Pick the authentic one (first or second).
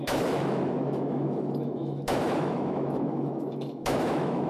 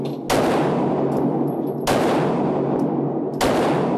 second